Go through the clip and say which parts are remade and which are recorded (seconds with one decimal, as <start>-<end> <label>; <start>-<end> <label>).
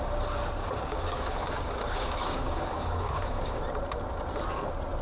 0.0-0.6 recorded; 0.6-3.6 remade; 3.6-5.0 recorded